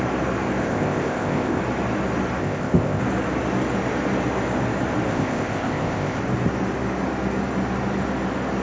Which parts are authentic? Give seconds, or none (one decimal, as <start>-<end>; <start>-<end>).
0.0-0.6; 1.6-2.4; 3.0-5.1; 6.2-8.6

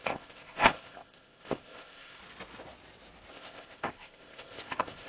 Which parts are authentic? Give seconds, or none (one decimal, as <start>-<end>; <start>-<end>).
2.2-3.3